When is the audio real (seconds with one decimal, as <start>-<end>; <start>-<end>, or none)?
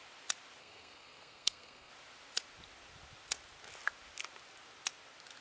0.0-0.6; 1.9-5.4